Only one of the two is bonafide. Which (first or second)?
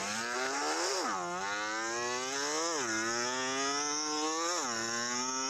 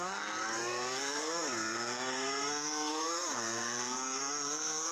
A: first